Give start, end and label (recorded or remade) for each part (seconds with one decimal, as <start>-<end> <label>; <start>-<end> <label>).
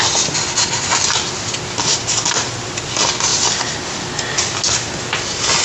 0.0-1.9 recorded; 1.9-2.6 remade; 2.6-5.6 recorded